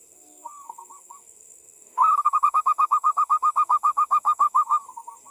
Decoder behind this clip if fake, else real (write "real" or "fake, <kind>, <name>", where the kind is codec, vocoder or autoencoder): fake, codec, SNAC